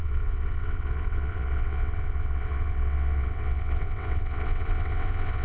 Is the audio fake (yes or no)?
yes